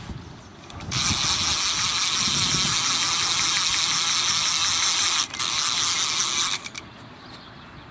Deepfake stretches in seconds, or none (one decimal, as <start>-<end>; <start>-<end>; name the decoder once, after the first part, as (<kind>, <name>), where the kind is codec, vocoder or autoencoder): none